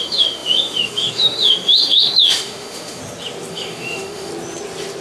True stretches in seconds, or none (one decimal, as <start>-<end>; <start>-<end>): 3.0-3.5; 4.3-5.0